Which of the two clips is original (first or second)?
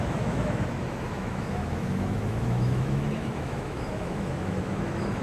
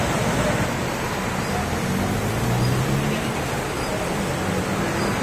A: second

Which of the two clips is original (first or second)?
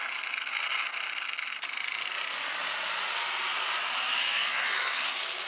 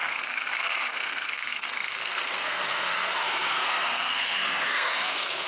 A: first